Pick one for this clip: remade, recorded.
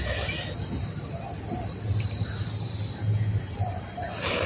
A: recorded